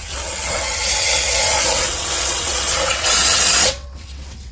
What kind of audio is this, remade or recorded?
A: remade